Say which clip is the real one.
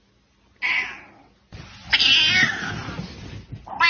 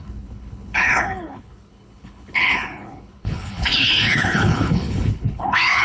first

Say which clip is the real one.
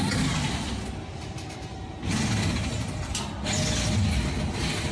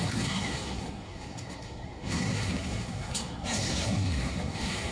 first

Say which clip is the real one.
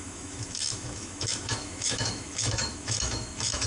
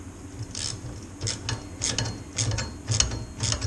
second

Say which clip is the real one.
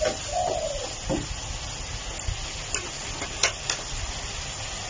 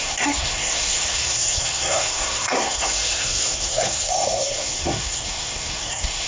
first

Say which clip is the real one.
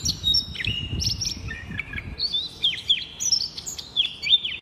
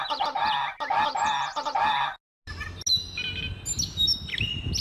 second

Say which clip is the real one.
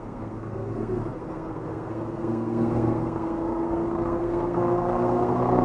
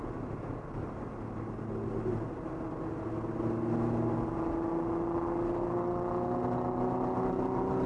second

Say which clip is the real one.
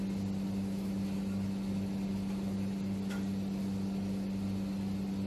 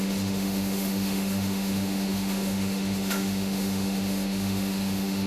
first